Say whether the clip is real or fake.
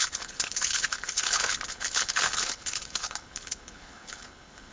fake